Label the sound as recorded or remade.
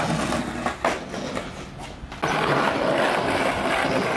recorded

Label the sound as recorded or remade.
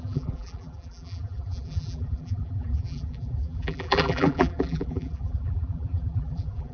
remade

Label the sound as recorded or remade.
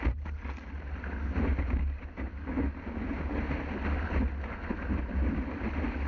recorded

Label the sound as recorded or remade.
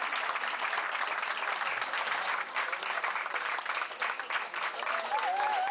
recorded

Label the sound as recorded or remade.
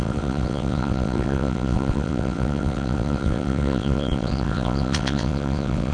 remade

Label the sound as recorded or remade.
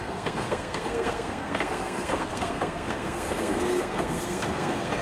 remade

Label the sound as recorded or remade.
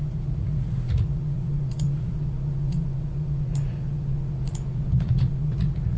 remade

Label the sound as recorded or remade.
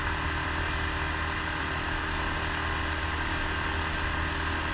recorded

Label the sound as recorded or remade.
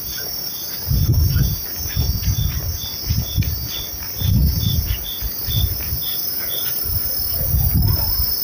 recorded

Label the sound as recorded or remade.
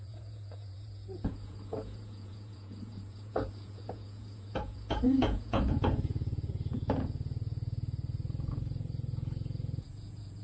remade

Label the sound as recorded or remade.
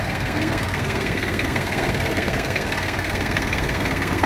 remade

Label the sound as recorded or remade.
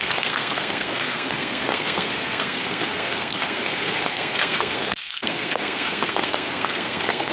remade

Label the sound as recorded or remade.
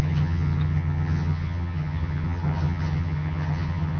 remade